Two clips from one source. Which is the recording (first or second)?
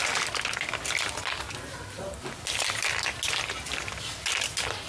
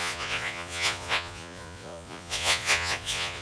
first